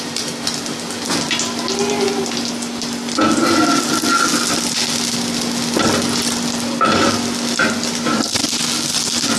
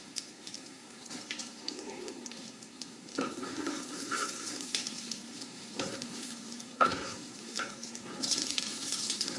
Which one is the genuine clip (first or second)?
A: first